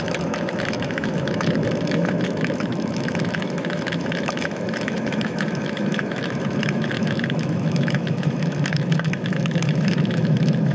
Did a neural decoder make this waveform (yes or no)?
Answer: yes